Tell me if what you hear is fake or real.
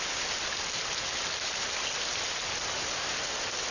real